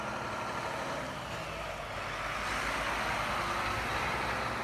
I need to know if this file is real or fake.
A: real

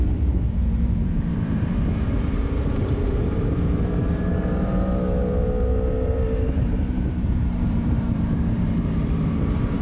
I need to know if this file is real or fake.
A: fake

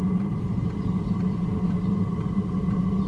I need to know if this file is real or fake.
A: real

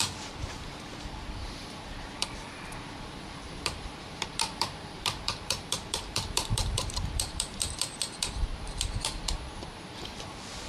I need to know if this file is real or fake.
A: fake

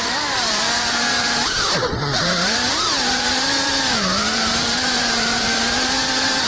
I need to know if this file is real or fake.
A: fake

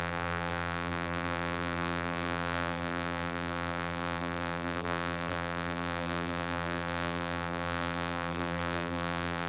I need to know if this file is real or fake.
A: fake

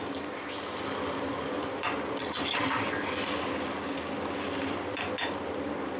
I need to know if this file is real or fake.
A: fake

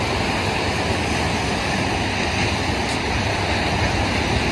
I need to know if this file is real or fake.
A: real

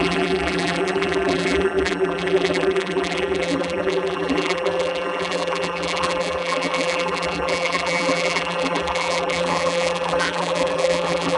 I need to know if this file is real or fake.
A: fake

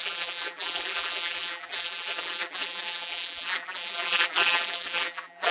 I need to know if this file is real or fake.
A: fake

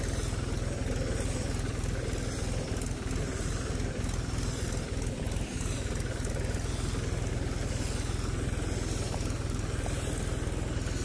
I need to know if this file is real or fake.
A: real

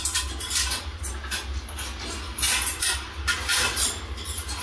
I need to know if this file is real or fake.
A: real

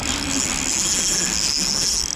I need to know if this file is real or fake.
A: real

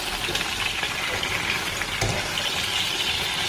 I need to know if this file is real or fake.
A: fake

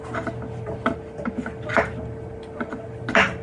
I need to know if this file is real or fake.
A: real